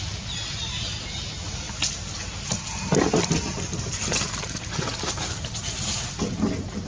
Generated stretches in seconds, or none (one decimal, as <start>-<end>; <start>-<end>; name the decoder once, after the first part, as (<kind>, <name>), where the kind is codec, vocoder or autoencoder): none

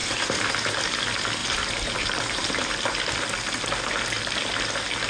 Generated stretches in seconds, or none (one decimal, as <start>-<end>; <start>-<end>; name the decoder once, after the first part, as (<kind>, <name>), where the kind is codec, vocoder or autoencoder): 0.0-0.5 (vocoder, BigVGAN v2); 1.4-2.5

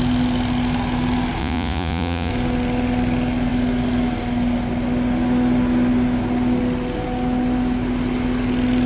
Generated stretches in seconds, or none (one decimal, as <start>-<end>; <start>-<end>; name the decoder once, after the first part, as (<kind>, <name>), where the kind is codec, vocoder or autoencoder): 1.4-2.3 (vocoder, Vocos)